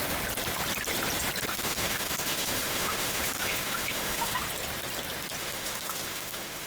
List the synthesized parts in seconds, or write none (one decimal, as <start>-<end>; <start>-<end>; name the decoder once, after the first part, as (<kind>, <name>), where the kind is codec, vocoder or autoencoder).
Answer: 1.5-4.4 (autoencoder, DAC-VAE); 5.4-6.7